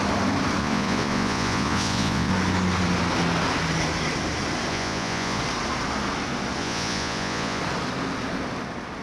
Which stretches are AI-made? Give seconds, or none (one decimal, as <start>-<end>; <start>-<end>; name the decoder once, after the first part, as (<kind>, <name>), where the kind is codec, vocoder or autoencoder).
0.6-2.3 (vocoder, Vocos); 4.7-5.4; 6.6-7.6